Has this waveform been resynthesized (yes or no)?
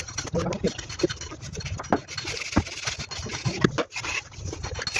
no